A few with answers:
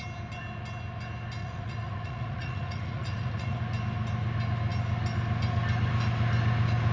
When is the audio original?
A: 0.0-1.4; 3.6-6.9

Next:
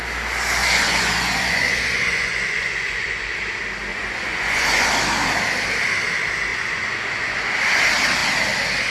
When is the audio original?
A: 0.0-0.6; 3.3-3.9; 4.9-6.5; 7.8-8.9